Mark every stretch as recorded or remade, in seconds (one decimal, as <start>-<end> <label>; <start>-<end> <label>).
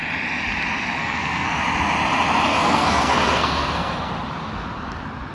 0.0-1.0 recorded; 1.0-1.6 remade; 1.6-2.5 recorded; 2.5-4.1 remade; 4.1-5.3 recorded